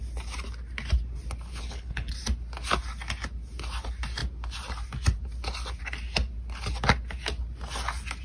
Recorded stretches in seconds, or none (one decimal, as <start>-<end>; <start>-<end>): 0.0-1.5; 2.1-8.2